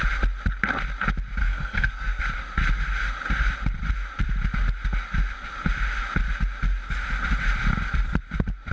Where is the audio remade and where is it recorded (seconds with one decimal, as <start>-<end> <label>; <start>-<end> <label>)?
0.0-1.4 recorded; 1.4-2.2 remade; 2.2-8.7 recorded